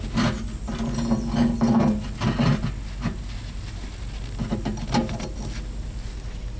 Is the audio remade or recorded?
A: recorded